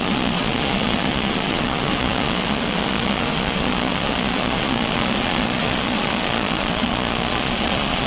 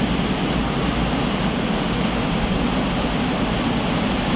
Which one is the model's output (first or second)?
first